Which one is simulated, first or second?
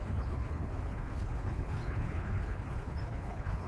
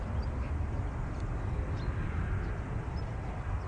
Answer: first